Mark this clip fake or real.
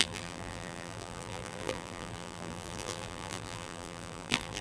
fake